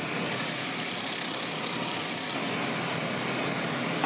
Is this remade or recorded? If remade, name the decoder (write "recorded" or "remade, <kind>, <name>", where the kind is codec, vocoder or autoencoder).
recorded